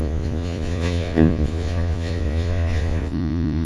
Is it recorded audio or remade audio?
remade